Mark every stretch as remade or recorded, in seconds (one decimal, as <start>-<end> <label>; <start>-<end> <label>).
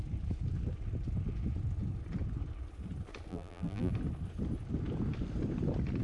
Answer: 0.0-3.3 recorded; 3.3-3.9 remade; 3.9-6.0 recorded